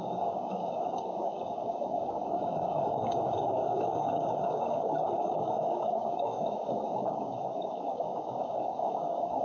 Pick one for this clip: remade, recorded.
remade